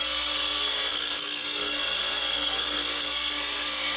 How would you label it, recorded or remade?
remade